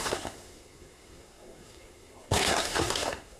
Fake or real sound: fake